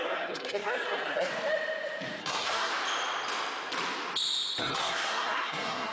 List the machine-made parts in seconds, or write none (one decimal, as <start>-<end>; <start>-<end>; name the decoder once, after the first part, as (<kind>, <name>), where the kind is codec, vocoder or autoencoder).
0.0-1.3 (codec, SNAC); 2.2-2.7; 4.6-5.9